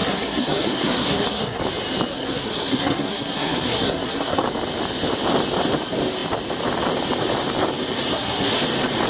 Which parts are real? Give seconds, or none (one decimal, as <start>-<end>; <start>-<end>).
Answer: 1.6-2.1; 4.4-8.1; 8.6-9.1